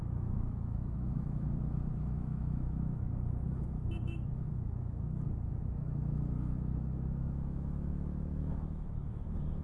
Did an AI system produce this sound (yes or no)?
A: yes